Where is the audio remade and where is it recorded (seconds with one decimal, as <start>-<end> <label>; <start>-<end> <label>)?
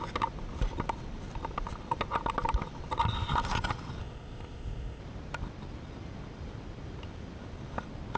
0.0-4.0 recorded; 4.0-5.0 remade; 5.0-8.2 recorded